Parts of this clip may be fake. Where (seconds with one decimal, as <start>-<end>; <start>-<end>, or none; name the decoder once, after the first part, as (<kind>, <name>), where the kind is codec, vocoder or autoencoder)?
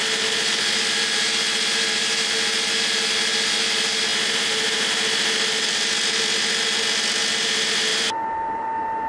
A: 7.9-9.1 (vocoder, BigVGAN v2)